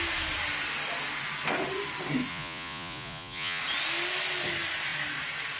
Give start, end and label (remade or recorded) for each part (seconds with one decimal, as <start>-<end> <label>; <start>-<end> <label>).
0.0-2.3 recorded; 2.3-3.6 remade; 3.6-5.6 recorded